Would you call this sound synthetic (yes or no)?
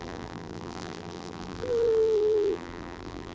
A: yes